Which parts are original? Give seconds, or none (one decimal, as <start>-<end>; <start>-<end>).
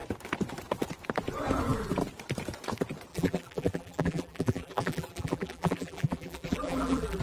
0.0-3.1